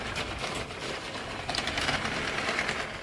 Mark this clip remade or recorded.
remade